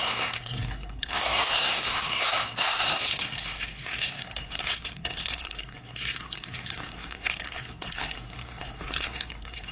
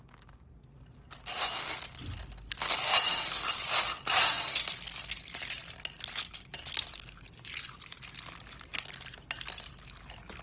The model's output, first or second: first